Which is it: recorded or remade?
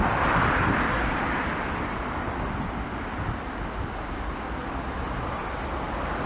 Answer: recorded